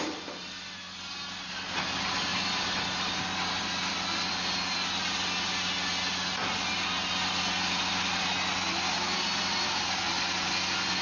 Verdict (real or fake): real